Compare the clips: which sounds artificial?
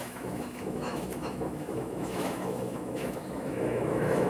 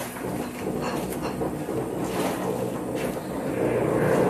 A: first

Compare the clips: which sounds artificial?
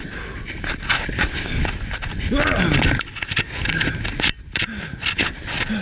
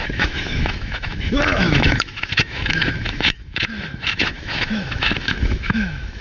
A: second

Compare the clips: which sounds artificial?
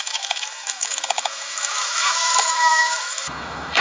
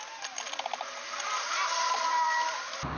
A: first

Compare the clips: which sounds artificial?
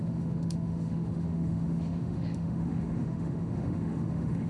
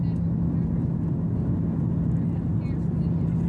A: first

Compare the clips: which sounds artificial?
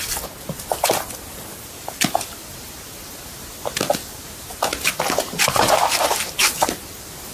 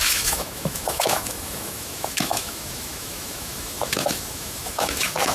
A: second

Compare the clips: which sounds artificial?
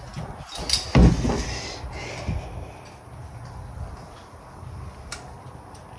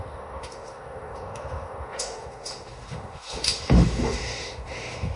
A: second